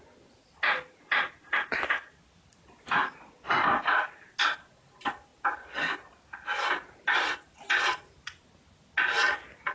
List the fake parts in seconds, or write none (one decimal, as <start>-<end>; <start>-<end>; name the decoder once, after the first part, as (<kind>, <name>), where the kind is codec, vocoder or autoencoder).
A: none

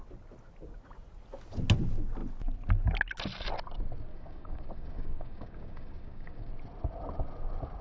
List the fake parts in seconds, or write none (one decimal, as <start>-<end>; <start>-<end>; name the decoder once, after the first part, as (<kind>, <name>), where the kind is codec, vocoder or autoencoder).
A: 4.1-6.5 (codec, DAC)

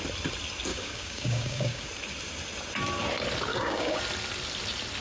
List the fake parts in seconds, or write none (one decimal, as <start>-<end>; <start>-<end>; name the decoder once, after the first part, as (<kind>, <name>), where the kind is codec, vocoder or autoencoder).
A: 0.7-1.9 (codec, DAC); 3.5-4.0